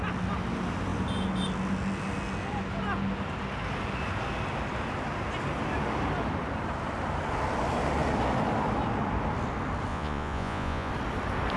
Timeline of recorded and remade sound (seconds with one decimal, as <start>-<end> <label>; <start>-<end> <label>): 0.0-9.9 recorded; 9.9-10.9 remade; 10.9-11.6 recorded